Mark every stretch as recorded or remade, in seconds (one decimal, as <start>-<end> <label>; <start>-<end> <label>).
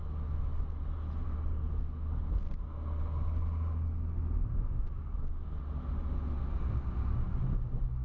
0.0-8.0 recorded